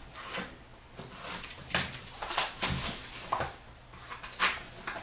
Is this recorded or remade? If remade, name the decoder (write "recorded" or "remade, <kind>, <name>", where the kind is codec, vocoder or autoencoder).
recorded